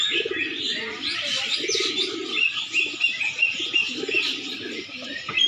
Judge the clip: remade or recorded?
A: remade